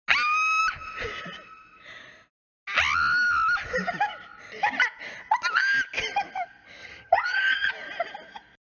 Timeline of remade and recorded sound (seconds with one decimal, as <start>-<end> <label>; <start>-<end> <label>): 0.0-6.8 recorded; 6.8-7.7 remade; 7.7-8.6 recorded